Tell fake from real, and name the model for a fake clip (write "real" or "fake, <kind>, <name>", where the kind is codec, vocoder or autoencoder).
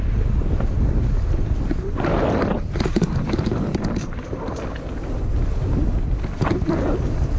real